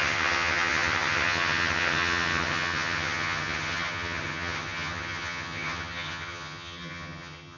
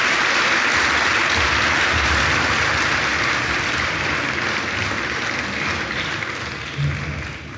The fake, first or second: first